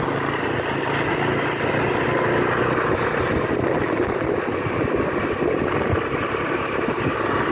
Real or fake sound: real